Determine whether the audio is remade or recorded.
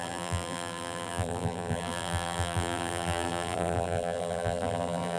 remade